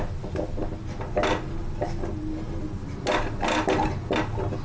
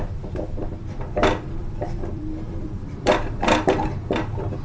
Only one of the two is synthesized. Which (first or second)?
second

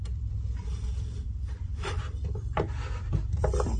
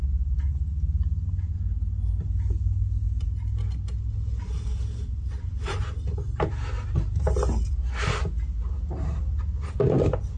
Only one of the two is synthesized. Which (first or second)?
first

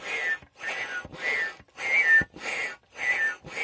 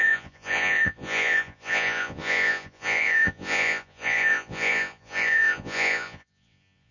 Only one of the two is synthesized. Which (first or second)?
second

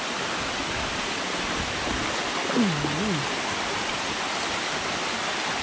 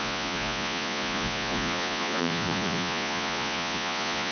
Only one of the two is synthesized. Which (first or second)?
second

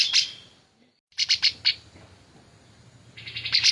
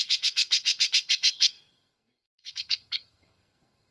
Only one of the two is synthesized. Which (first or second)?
second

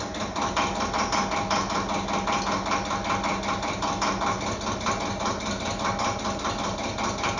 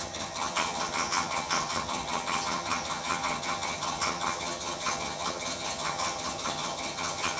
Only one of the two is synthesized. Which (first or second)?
second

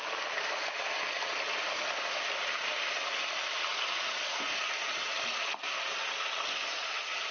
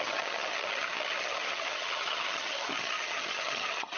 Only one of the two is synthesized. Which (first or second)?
second